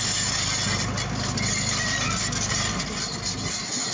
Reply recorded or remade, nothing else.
recorded